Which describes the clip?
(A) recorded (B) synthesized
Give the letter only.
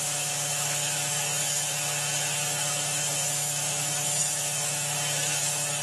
B